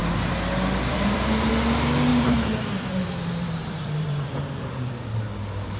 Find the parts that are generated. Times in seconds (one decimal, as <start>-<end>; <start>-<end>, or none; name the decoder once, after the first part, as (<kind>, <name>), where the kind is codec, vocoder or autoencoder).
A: 0.9-1.5 (vocoder, BigVGAN v2); 2.1-4.9